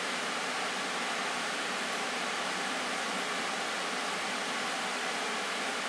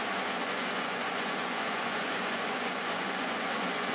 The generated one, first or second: second